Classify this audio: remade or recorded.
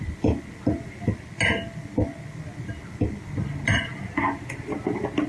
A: recorded